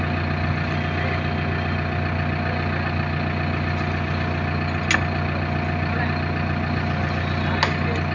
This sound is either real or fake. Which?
real